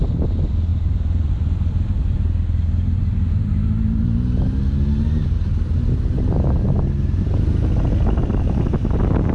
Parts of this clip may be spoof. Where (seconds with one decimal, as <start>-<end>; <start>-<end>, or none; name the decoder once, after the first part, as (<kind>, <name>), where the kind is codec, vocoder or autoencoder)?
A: 0.7-1.3 (vocoder, BigVGAN v2)